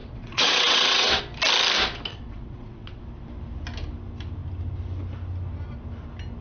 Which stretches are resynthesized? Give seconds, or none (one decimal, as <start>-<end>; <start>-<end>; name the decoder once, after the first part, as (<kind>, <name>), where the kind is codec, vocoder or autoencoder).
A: 0.0-1.2 (vocoder, WaveNeXt); 2.1-3.0